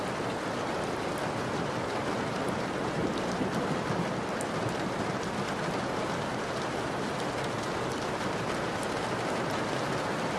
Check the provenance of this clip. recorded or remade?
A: recorded